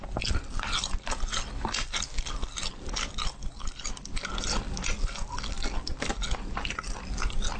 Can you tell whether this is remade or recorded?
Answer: recorded